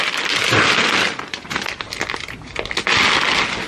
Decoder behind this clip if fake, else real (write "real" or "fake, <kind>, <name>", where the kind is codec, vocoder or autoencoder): real